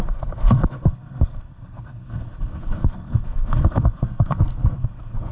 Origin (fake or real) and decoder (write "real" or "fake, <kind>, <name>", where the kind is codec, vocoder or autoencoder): fake, codec, SNAC